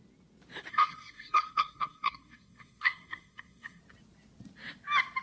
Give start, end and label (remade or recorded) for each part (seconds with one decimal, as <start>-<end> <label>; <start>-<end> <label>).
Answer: 0.0-0.7 recorded; 0.7-3.8 remade; 3.8-5.2 recorded